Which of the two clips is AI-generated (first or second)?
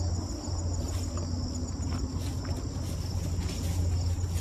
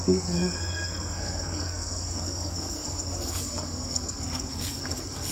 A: second